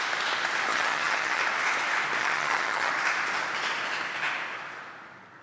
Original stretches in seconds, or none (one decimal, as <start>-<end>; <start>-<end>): 0.0-0.7; 1.4-2.2; 2.9-5.4

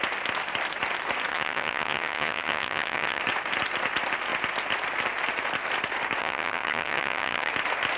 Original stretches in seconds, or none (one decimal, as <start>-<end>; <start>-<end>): 0.0-1.3; 3.2-6.2; 7.5-8.0

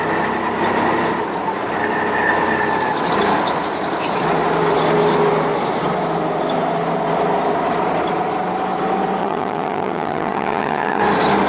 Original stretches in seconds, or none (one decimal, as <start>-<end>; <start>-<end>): 0.0-9.2; 11.0-11.5

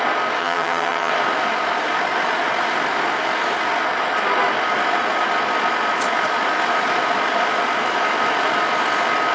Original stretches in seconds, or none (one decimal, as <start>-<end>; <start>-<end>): 0.0-0.4; 1.1-9.3